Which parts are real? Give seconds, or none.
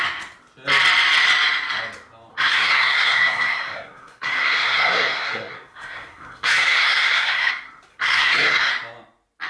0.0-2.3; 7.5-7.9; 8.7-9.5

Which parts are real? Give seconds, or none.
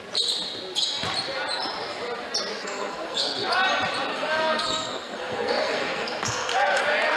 0.0-2.5; 3.5-4.1; 6.8-7.2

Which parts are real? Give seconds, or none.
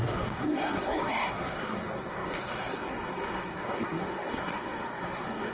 none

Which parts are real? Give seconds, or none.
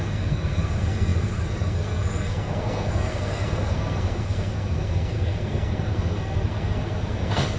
none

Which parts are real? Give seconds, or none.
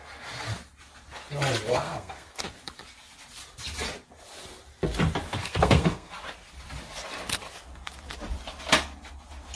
0.0-1.7; 2.4-5.4; 6.1-9.5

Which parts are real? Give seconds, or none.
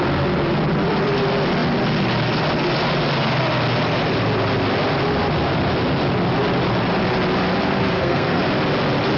0.0-7.6; 8.4-9.2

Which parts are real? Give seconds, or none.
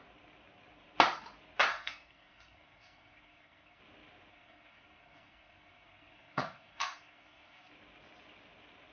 0.0-1.7; 3.8-4.3; 7.7-8.9